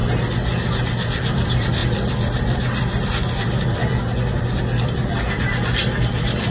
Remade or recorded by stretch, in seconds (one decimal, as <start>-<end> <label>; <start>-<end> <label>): 0.0-1.1 recorded; 1.1-6.5 remade